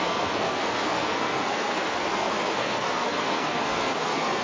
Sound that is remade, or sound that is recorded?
remade